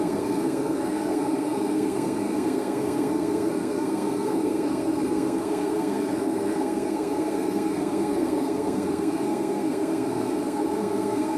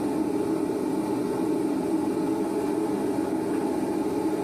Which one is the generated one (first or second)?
first